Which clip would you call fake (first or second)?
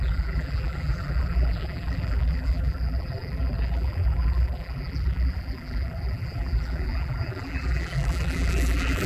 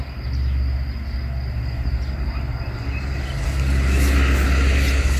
first